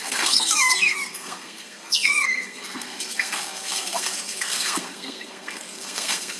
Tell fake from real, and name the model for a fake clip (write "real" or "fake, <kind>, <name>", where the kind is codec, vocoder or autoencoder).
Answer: fake, codec, SNAC